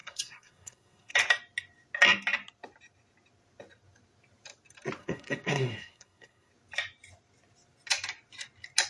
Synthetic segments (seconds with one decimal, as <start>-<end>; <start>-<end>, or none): 0.0-1.1; 5.0-6.5